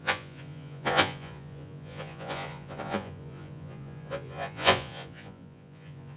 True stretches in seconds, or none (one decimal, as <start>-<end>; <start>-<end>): none